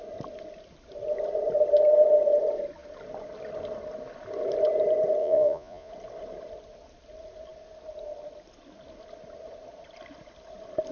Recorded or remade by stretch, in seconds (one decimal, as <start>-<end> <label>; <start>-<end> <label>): 0.0-5.2 recorded; 5.2-5.9 remade; 5.9-10.9 recorded